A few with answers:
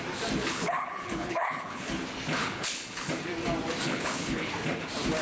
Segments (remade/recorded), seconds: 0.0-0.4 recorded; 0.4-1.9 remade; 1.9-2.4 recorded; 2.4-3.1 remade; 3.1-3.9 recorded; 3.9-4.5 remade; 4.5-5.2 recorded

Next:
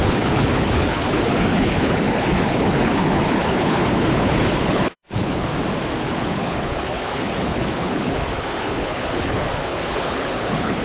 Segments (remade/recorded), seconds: 0.0-5.5 remade; 5.5-6.0 recorded; 6.0-10.8 remade

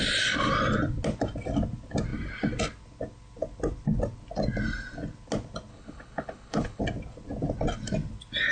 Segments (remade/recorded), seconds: 0.0-5.7 recorded; 5.7-6.8 remade; 6.8-8.5 recorded

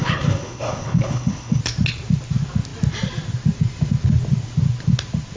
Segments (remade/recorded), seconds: 0.0-1.6 remade; 1.6-5.4 recorded

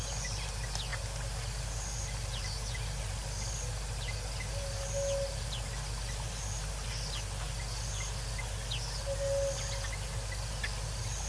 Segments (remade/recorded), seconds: 0.0-11.3 recorded